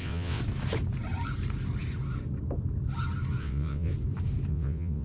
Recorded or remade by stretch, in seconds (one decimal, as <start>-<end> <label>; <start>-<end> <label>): 0.0-0.4 remade; 0.4-3.4 recorded; 3.4-3.9 remade; 3.9-4.5 recorded; 4.5-5.0 remade